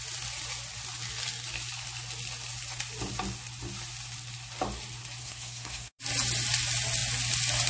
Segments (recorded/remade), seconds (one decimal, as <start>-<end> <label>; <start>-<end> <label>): 0.0-5.2 recorded; 5.2-6.0 remade; 6.0-7.7 recorded

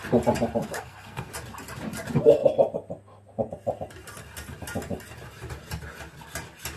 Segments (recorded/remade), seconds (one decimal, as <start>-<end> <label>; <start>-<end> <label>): 0.0-0.6 recorded; 0.6-1.3 remade; 1.3-6.8 recorded

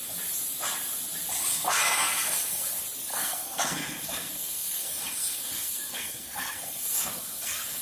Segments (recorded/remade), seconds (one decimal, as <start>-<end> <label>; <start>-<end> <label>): 0.0-1.5 recorded; 1.5-2.7 remade; 2.7-3.1 recorded; 3.1-7.8 remade

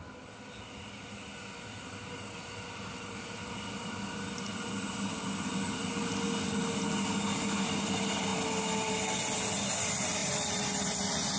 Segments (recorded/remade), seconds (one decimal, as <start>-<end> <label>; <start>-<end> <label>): 0.0-11.4 recorded